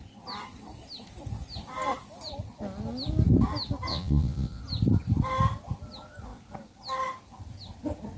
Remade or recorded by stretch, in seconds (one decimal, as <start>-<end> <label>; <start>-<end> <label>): 0.0-3.9 recorded; 3.9-4.6 remade; 4.6-8.2 recorded